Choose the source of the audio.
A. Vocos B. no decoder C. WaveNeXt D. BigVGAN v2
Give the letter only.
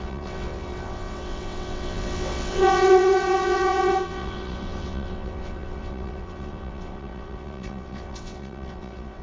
C